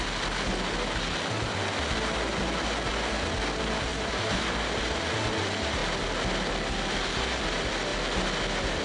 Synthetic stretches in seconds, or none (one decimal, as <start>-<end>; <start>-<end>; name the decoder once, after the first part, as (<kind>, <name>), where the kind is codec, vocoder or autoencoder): 3.9-4.5 (vocoder, BigVGAN v2)